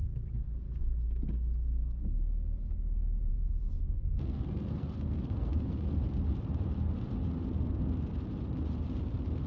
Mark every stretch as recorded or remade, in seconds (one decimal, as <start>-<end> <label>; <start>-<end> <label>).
0.0-3.3 recorded; 3.3-5.9 remade; 5.9-9.5 recorded